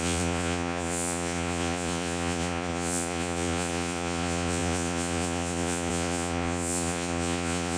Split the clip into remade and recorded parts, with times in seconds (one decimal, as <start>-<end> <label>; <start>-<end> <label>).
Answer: 0.0-7.8 remade